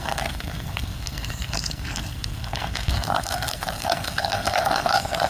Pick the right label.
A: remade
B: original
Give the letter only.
A